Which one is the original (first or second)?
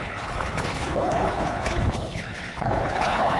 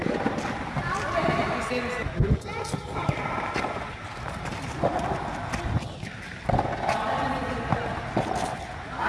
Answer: second